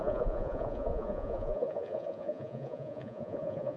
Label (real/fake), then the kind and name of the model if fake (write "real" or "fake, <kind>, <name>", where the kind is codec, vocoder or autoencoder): fake, vocoder, Vocos